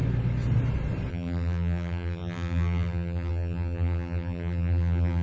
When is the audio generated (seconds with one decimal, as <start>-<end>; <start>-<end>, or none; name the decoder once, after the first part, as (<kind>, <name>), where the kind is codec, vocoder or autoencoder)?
1.1-5.2 (vocoder, BigVGAN v2)